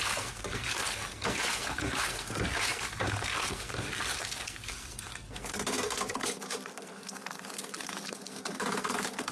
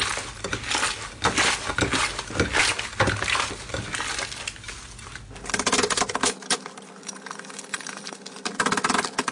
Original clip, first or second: second